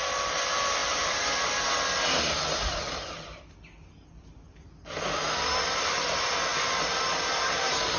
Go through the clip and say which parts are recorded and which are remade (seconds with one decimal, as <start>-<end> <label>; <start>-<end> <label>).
0.0-8.0 recorded